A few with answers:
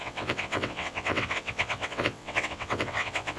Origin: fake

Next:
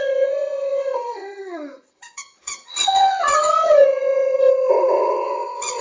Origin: fake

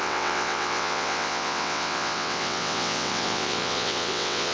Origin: fake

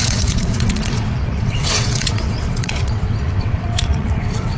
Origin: fake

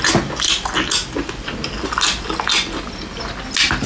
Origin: real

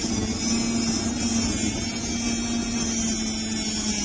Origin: real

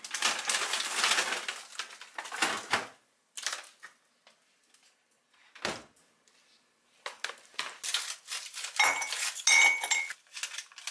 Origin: real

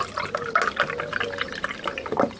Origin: real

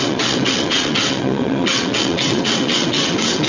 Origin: fake